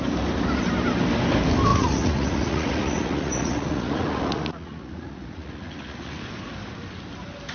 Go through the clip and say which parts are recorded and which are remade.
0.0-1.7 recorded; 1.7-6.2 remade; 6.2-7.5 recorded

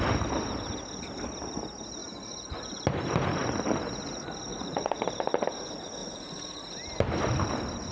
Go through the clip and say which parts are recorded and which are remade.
0.0-4.5 recorded; 4.5-5.0 remade; 5.0-6.0 recorded; 6.0-6.6 remade; 6.6-7.9 recorded

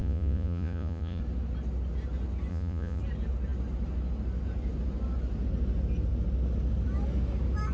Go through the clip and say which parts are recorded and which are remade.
0.0-1.2 remade; 1.2-2.5 recorded; 2.5-3.0 remade; 3.0-7.7 recorded

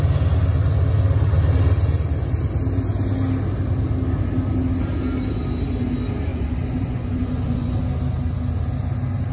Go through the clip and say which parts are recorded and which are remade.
0.0-6.3 recorded; 6.3-7.8 remade; 7.8-9.3 recorded

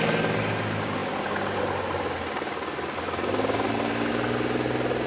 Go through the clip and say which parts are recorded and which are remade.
0.0-5.1 recorded

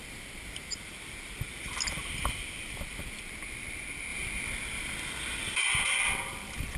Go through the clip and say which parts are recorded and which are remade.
0.0-6.8 recorded

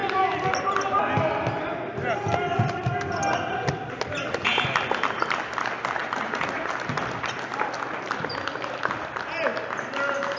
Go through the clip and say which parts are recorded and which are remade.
0.0-6.0 recorded; 6.0-6.7 remade; 6.7-10.4 recorded

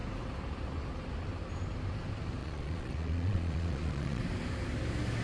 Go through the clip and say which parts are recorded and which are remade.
0.0-2.4 recorded; 2.4-4.2 remade; 4.2-5.2 recorded